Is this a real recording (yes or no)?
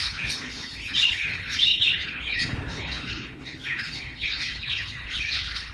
no